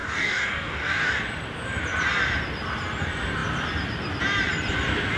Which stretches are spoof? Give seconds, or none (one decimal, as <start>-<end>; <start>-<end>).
0.0-1.2